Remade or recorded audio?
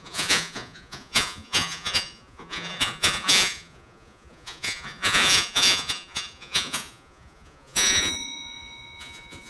remade